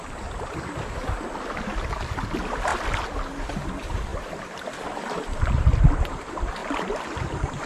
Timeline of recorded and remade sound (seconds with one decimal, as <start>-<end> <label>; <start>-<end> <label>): 0.0-7.7 recorded